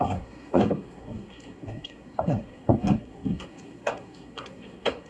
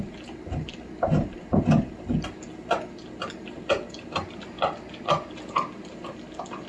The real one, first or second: second